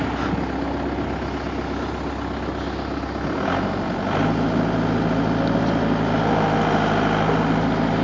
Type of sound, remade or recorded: recorded